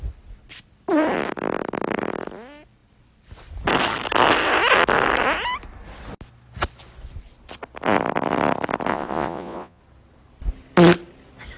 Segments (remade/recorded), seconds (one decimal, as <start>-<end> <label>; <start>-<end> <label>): 0.0-8.9 recorded; 8.9-9.8 remade; 9.8-11.6 recorded